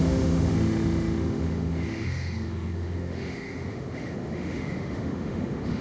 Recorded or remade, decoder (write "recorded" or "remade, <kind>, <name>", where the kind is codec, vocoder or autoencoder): remade, autoencoder, DAC-VAE